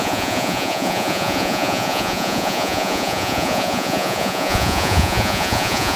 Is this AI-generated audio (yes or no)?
yes